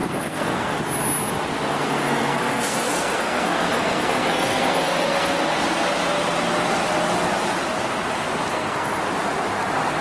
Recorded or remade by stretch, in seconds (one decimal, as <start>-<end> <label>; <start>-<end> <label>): 0.0-0.8 remade; 0.8-1.7 recorded; 1.7-5.4 remade; 5.4-8.5 recorded; 8.5-9.0 remade; 9.0-10.0 recorded

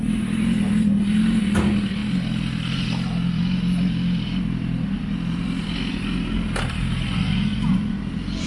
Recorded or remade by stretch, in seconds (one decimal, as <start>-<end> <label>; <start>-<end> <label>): 0.0-7.1 recorded; 7.1-8.0 remade; 8.0-8.5 recorded

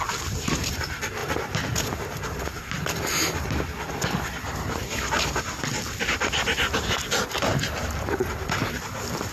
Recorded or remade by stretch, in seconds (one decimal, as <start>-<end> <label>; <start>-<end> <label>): 0.0-9.3 recorded

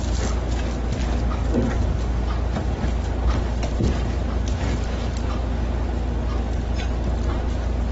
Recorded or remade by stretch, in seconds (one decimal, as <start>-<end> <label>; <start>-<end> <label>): 0.0-1.0 recorded; 1.0-2.2 remade; 2.2-7.9 recorded

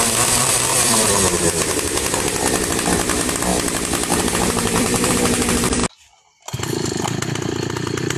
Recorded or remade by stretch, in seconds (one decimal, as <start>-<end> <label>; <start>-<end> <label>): 0.0-3.5 remade; 3.5-4.2 recorded; 4.2-5.8 remade; 5.8-6.6 recorded; 6.6-8.2 remade